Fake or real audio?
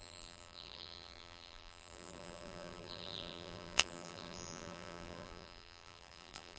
fake